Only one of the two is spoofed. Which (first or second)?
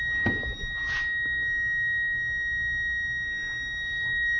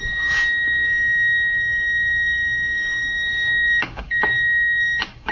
second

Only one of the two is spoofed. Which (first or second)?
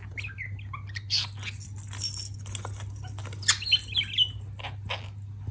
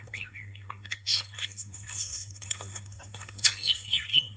second